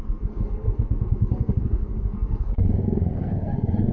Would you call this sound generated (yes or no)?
yes